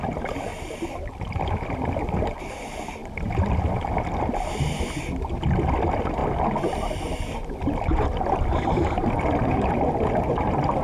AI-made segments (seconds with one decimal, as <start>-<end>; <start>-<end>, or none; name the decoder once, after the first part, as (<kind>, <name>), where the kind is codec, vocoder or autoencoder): 0.5-1.5 (vocoder, BigVGAN v2)